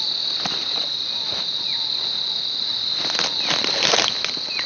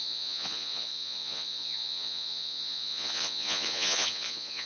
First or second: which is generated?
second